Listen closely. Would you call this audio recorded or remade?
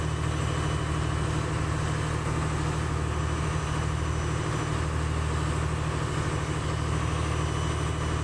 recorded